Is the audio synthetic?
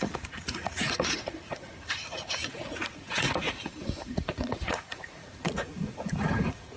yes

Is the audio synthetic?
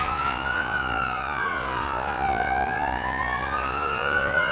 yes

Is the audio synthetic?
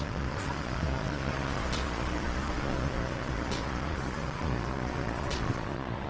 yes